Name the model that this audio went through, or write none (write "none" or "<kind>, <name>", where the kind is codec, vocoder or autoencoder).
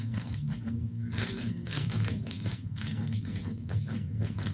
codec, SNAC